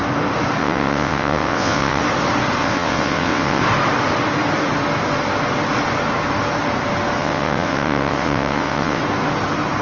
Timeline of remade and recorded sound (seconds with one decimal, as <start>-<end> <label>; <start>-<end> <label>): 0.0-0.6 recorded; 0.6-2.0 remade; 2.0-2.6 recorded; 2.6-3.6 remade; 3.6-7.2 recorded; 7.2-9.0 remade; 9.0-9.8 recorded